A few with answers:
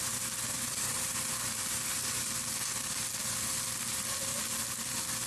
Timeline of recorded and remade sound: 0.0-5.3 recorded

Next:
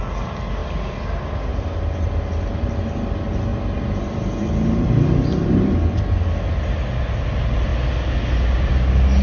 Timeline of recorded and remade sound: 0.0-9.2 recorded